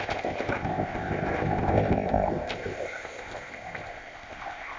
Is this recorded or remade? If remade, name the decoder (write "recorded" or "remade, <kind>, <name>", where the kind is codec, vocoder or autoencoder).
remade, codec, ZipCodec